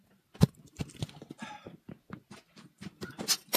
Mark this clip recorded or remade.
recorded